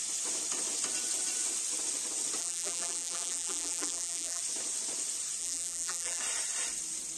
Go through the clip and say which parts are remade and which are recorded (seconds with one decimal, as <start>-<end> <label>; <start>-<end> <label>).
0.0-2.4 recorded; 2.4-4.4 remade; 4.4-5.4 recorded; 5.4-6.2 remade; 6.2-7.2 recorded

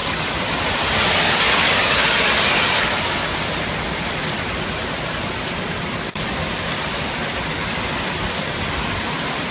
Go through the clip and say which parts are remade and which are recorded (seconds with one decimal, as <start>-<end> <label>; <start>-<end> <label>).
0.0-0.8 remade; 0.8-9.5 recorded

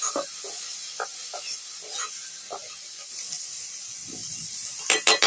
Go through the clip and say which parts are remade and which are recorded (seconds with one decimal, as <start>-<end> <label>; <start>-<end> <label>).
0.0-2.6 recorded; 2.6-3.8 remade; 3.8-4.2 recorded; 4.2-5.3 remade

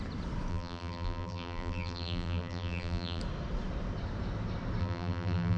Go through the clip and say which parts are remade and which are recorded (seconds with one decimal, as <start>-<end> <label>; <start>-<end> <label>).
0.0-0.5 recorded; 0.5-3.2 remade; 3.2-4.8 recorded; 4.8-5.6 remade

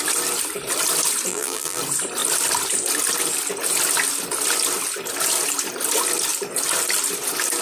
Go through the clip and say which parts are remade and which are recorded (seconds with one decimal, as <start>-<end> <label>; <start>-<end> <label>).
0.0-1.3 recorded; 1.3-1.8 remade; 1.8-7.6 recorded

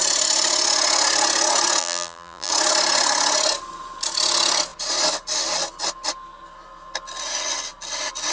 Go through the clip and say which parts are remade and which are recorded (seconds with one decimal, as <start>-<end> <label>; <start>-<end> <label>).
0.0-1.8 recorded; 1.8-2.5 remade; 2.5-8.3 recorded

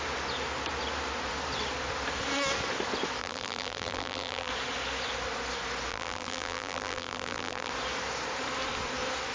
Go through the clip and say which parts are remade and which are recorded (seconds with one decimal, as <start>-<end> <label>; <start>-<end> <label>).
0.0-3.2 recorded; 3.2-4.5 remade; 4.5-5.9 recorded; 5.9-7.7 remade; 7.7-9.3 recorded